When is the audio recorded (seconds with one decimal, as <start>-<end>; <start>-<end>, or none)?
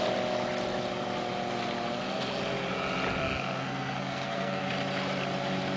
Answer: 0.0-3.2; 4.7-5.8